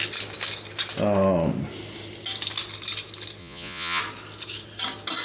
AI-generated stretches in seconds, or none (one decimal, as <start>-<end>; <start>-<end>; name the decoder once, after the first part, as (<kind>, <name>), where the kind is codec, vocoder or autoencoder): 3.4-4.0 (vocoder, Vocos)